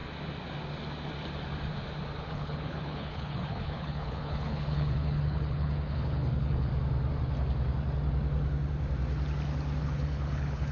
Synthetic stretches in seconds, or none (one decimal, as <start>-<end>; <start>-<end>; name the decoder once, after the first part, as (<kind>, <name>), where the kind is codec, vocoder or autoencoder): 2.3-6.7 (codec, HILCodec); 9.8-10.7